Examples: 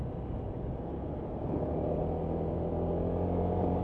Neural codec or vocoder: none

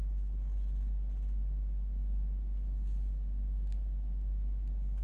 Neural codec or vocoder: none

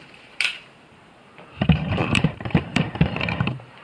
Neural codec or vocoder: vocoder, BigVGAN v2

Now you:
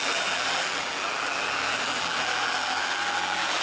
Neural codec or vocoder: vocoder, BigVGAN v2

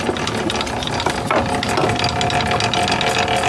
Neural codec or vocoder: none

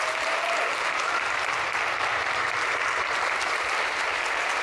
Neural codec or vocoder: vocoder, BigVGAN v2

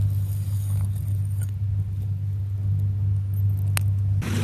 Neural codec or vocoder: none